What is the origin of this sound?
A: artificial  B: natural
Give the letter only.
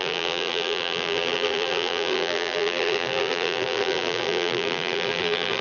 A